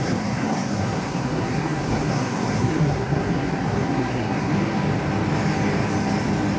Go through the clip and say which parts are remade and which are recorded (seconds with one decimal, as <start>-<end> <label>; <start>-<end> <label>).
0.0-4.5 remade; 4.5-6.6 recorded